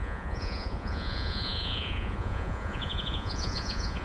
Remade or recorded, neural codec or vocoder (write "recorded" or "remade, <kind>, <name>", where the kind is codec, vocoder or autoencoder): remade, vocoder, Vocos